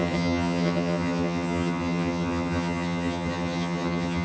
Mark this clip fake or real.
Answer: fake